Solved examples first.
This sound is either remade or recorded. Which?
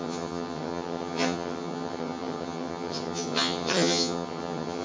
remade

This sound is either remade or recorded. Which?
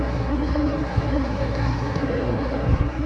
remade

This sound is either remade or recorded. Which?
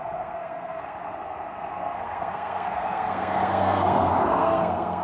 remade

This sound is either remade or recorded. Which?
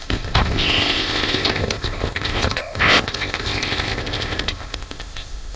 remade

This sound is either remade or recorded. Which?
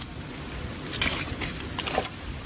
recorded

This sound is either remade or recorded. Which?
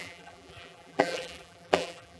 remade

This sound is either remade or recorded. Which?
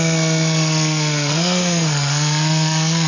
remade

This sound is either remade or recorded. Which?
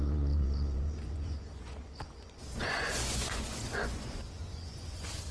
remade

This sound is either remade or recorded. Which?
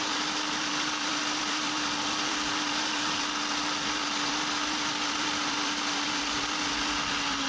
remade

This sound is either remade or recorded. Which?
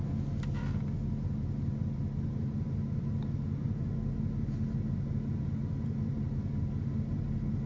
recorded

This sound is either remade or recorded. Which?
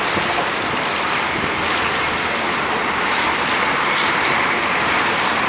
remade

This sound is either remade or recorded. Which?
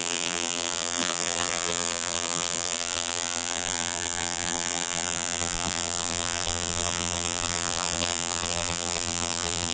remade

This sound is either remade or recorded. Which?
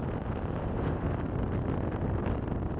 recorded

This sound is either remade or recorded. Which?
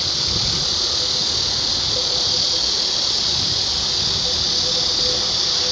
recorded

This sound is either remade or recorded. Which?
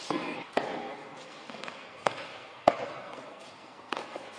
remade